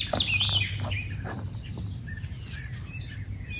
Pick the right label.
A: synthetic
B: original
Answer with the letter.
B